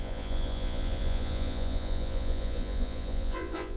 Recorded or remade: remade